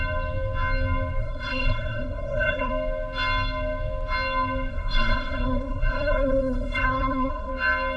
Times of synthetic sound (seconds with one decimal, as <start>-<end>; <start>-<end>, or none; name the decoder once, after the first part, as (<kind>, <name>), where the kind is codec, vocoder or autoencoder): 1.2-2.7 (codec, SNAC); 4.7-7.5